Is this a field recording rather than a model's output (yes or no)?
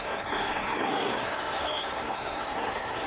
no